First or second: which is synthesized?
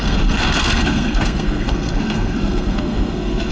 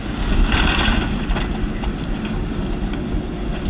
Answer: first